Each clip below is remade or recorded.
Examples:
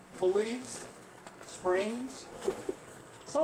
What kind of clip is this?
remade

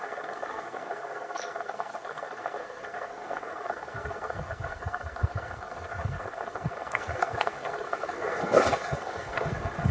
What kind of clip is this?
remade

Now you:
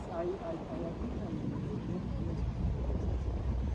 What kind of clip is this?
recorded